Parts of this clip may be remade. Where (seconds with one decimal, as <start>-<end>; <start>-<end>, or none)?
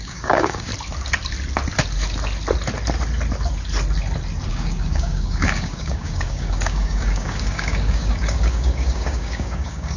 0.0-0.7; 4.5-10.0